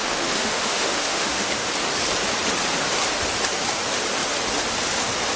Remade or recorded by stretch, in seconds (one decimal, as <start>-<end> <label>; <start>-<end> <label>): 0.0-1.7 remade; 1.7-5.4 recorded

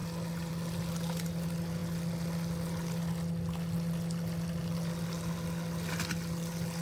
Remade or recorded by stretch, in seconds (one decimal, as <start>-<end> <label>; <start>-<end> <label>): 0.0-6.8 recorded

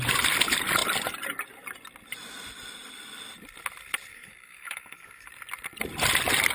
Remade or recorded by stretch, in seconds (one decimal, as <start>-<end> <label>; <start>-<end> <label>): 0.0-4.1 recorded; 4.1-5.3 remade; 5.3-6.5 recorded

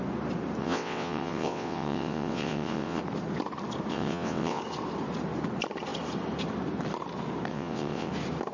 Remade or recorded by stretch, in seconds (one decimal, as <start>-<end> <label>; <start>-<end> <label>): 0.0-0.6 recorded; 0.6-3.0 remade; 3.0-3.9 recorded; 3.9-4.6 remade; 4.6-7.5 recorded; 7.5-8.1 remade; 8.1-8.5 recorded

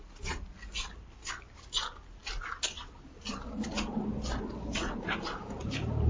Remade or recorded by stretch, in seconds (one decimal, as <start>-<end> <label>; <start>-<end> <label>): 0.0-6.1 recorded

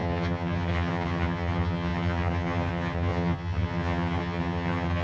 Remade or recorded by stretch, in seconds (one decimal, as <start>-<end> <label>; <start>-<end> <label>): 0.0-5.0 remade

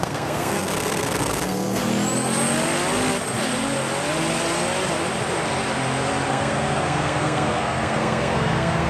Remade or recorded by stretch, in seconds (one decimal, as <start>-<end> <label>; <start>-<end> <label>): 0.0-1.9 remade; 1.9-6.3 recorded; 6.3-8.9 remade